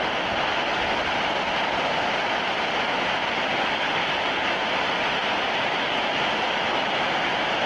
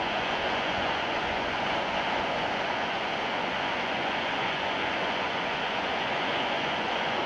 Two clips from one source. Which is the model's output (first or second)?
second